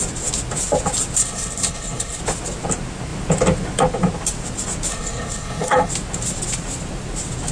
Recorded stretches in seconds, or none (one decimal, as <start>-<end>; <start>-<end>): 0.0-1.2; 2.2-4.9; 5.9-7.5